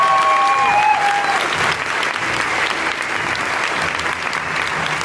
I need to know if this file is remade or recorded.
recorded